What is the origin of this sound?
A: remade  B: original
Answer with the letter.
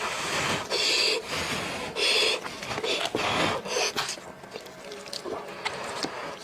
B